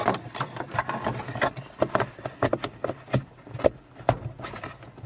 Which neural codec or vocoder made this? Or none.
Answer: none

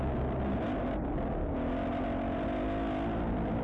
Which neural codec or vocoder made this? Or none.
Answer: none